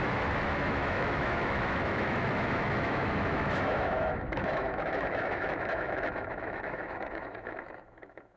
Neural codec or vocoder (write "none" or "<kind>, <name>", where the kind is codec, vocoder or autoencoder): autoencoder, DAC-VAE